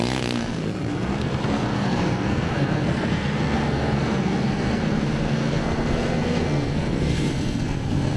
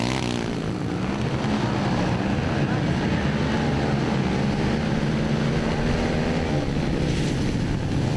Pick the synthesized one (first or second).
first